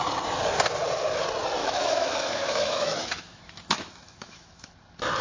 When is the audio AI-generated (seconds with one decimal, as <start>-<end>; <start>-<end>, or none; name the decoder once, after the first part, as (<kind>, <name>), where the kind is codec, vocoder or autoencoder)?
1.6-4.7 (autoencoder, DAC-VAE)

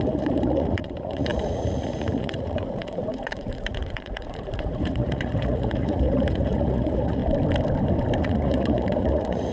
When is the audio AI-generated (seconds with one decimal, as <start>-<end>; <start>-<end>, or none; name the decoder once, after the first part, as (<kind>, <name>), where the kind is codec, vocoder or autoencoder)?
0.0-7.2 (vocoder, Vocos); 8.2-9.5

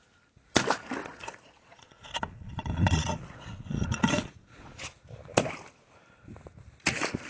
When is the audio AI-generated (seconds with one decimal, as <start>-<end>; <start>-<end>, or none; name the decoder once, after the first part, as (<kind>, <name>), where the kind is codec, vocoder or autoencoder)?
1.0-4.8 (vocoder, Vocos)

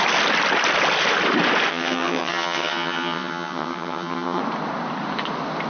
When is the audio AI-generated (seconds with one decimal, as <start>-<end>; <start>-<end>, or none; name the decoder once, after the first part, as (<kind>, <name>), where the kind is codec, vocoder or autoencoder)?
1.7-4.4 (vocoder, HiFi-GAN)